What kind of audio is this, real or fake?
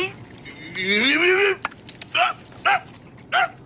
real